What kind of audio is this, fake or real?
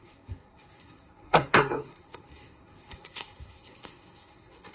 fake